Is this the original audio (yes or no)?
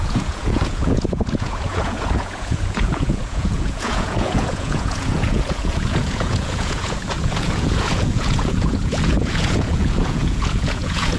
no